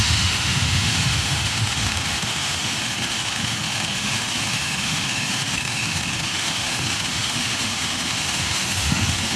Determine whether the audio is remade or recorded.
remade